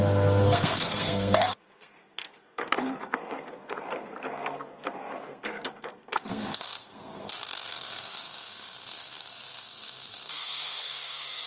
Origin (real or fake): fake